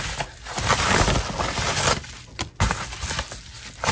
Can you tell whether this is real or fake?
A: real